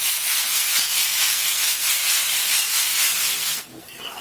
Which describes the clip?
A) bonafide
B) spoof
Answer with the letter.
B